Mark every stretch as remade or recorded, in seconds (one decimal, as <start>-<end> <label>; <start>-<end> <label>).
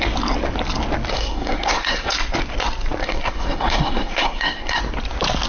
0.0-1.1 recorded; 1.1-2.1 remade; 2.1-3.0 recorded; 3.0-4.8 remade; 4.8-5.5 recorded